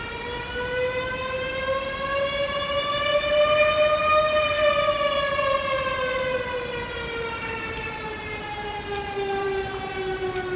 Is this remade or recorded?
recorded